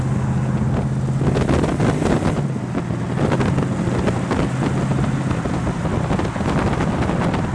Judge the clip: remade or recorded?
recorded